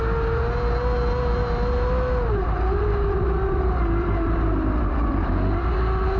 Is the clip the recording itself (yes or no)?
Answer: yes